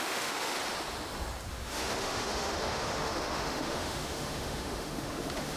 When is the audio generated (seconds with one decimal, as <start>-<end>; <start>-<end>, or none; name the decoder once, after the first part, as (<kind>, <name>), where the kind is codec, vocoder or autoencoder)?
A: 0.0-0.6 (autoencoder, DAC-VAE); 1.5-5.6